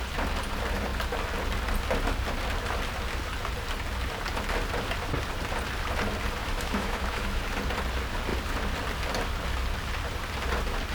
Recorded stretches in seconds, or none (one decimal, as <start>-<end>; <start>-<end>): 0.0-6.4; 7.4-10.9